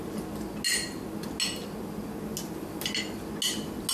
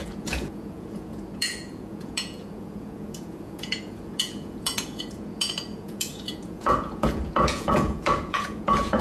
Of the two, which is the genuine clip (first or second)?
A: first